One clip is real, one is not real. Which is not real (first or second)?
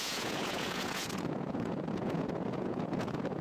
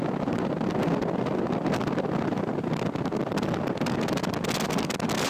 first